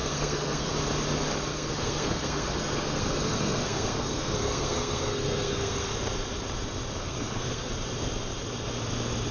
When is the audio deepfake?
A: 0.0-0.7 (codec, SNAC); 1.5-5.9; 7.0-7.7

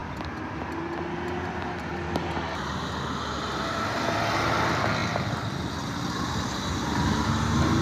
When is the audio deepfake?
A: none